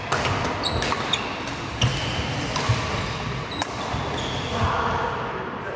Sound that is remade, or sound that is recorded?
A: recorded